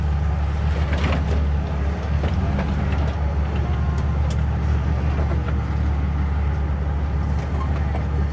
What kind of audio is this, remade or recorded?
recorded